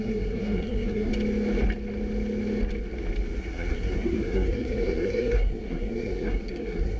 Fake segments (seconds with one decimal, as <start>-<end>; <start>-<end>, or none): 0.0-1.1; 3.4-7.0